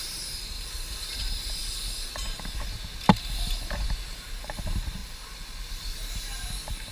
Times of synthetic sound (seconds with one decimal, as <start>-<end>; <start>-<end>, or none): 0.0-1.6; 4.2-6.9